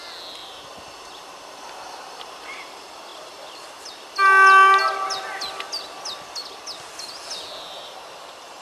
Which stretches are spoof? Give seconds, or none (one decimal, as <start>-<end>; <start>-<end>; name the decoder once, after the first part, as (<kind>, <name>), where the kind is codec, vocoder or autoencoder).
0.4-2.6 (vocoder, BigVGAN v2)